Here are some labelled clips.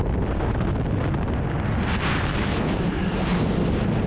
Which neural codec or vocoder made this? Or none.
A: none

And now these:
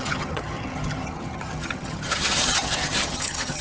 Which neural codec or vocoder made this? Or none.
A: vocoder, HiFi-GAN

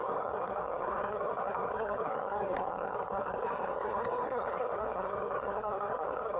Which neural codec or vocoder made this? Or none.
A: codec, SNAC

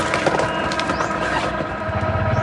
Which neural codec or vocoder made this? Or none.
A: none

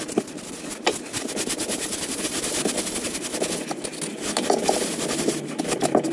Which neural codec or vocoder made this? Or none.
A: none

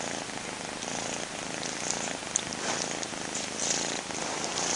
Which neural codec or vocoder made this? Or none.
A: none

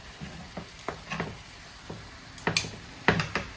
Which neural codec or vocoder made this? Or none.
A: none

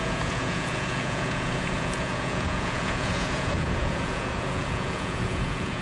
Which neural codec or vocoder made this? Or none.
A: vocoder, Vocos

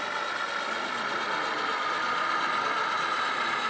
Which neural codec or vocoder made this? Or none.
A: none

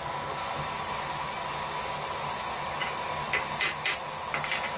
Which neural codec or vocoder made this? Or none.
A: none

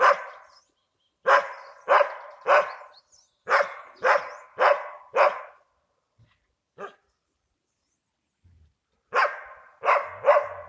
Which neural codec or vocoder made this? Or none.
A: none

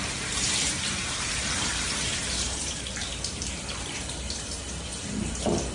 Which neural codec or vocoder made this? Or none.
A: vocoder, BigVGAN v2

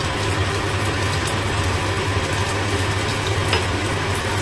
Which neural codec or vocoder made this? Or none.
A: none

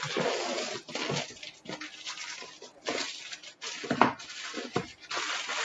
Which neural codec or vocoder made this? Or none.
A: none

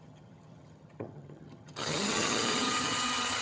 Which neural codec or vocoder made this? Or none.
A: vocoder, HiFi-GAN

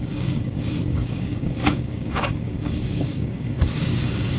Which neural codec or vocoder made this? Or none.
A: codec, DAC